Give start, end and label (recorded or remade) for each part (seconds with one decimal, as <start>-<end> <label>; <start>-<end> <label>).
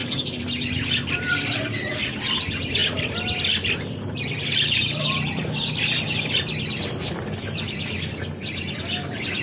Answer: 0.0-2.4 remade; 2.4-2.8 recorded; 2.8-5.4 remade; 5.4-7.4 recorded; 7.4-8.2 remade; 8.2-9.4 recorded